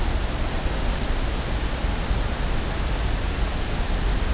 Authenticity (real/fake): real